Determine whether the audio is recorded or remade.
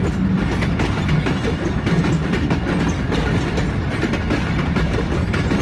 recorded